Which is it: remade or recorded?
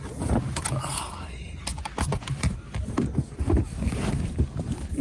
recorded